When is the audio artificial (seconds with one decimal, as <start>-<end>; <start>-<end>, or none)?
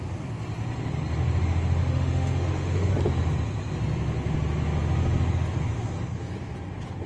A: 1.8-2.9